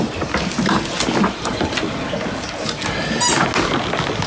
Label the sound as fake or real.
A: real